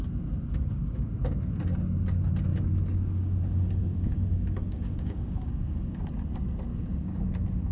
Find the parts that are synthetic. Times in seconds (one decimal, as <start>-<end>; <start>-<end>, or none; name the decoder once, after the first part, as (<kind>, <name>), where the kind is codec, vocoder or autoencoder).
0.5-1.2 (codec, DAC); 2.5-6.0; 6.7-7.2